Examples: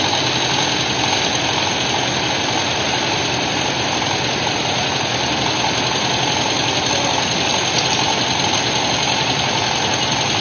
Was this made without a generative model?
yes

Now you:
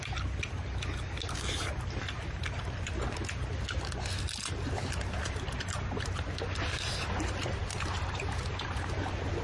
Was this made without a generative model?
yes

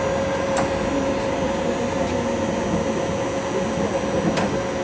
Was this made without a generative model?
yes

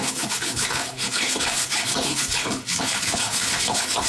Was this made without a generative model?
no